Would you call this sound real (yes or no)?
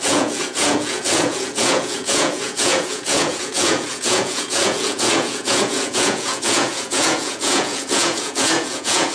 no